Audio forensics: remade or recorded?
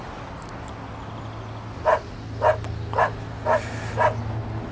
recorded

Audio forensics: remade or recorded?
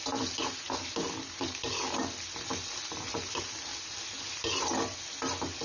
recorded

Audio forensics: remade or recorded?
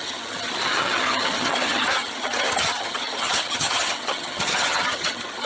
remade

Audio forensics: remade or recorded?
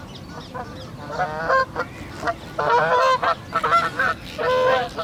recorded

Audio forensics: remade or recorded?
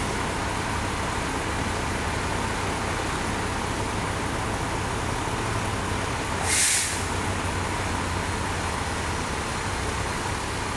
recorded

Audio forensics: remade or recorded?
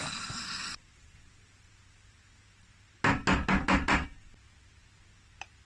recorded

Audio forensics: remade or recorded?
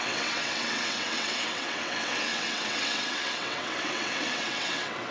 remade